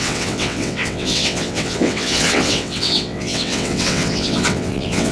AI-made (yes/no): yes